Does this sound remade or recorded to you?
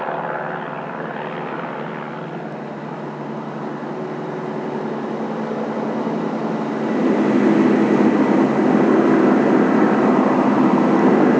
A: recorded